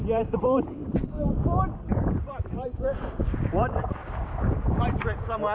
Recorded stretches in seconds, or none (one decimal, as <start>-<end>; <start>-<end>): 1.3-1.9; 5.0-5.5